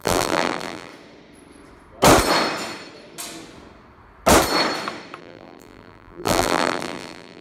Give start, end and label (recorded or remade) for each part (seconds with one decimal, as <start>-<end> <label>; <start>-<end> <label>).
0.0-0.9 remade; 0.9-5.2 recorded; 5.2-7.4 remade